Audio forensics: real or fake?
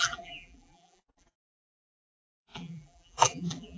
fake